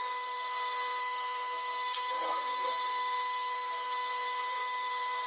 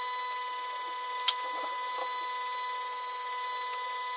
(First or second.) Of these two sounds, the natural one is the second